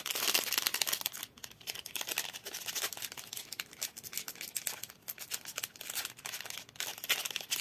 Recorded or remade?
recorded